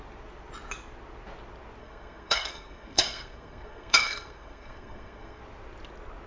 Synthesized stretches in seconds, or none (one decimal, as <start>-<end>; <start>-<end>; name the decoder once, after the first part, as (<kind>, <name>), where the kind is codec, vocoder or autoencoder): 1.8-5.4 (codec, SNAC)